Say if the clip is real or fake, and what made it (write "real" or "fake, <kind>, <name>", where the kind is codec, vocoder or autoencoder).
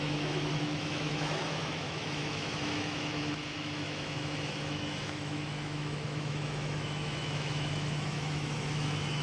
fake, autoencoder, DAC-VAE